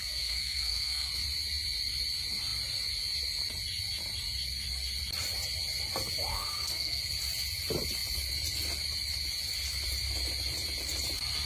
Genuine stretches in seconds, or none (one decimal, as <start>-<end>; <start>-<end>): 1.1-6.3; 7.0-11.5

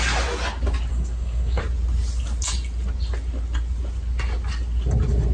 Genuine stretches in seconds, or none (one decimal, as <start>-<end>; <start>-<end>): 0.0-0.9; 1.6-5.3

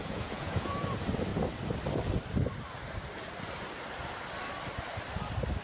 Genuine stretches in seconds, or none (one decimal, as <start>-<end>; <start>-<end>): 0.7-5.6

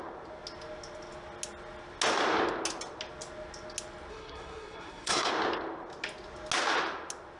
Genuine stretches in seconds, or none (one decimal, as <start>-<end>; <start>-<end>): 0.0-4.1; 5.3-7.4

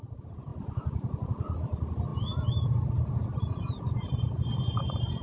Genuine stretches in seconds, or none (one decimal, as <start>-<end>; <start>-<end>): 0.0-5.2

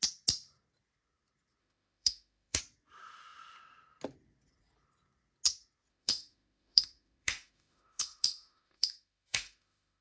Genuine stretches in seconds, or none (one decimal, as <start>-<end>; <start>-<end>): 0.0-1.6; 2.6-5.9

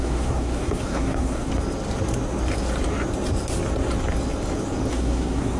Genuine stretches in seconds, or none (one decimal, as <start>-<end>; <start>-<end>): 1.5-4.9

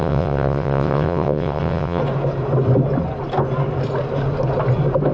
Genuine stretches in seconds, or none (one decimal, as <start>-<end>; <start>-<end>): 2.0-5.1